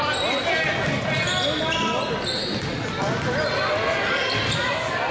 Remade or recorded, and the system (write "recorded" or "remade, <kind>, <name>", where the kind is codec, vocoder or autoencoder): recorded